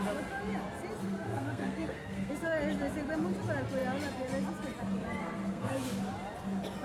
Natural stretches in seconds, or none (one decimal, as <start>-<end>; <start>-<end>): 0.0-1.0; 2.3-5.2; 5.7-6.8